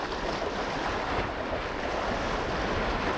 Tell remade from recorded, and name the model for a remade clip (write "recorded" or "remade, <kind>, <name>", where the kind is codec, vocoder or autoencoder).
recorded